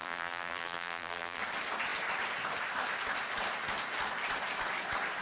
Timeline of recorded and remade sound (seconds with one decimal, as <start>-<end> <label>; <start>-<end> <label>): 0.0-1.4 remade; 1.4-5.2 recorded